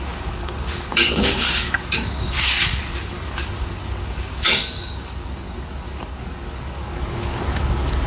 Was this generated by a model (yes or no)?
yes